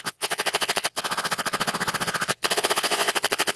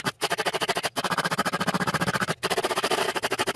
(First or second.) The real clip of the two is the second